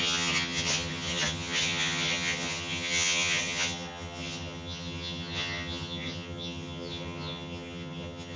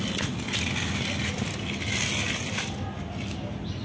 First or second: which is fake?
first